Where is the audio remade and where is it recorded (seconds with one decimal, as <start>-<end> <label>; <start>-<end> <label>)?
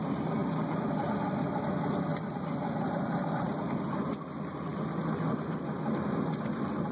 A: 0.0-6.9 recorded